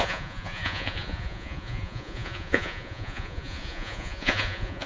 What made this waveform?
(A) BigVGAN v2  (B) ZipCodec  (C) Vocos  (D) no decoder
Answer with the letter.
C